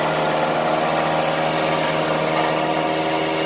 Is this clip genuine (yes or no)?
yes